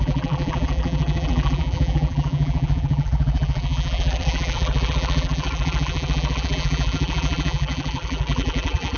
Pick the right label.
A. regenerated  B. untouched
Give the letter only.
A